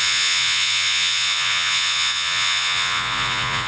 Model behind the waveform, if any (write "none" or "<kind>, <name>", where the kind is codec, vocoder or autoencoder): vocoder, Vocos